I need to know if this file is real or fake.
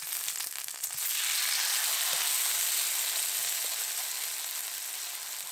real